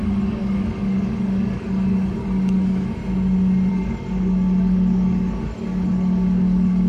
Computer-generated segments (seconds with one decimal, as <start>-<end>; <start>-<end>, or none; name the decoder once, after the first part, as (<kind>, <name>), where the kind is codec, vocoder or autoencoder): 0.0-3.0 (codec, DAC); 3.7-6.9